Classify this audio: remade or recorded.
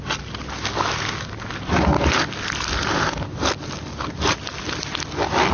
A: recorded